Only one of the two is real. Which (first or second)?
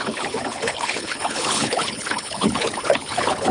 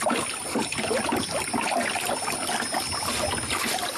second